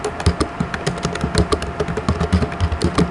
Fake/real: real